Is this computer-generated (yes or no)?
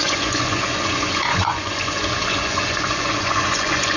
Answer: yes